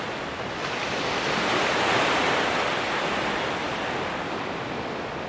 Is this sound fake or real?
real